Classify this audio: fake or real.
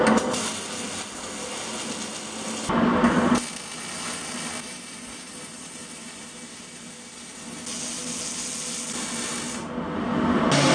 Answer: real